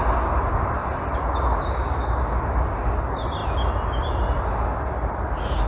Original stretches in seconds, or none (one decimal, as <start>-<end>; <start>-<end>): 0.0-5.7

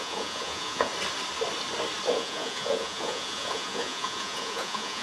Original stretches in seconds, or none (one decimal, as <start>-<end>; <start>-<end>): 0.9-2.1

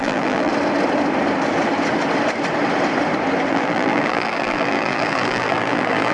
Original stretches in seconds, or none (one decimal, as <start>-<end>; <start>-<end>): 0.5-3.5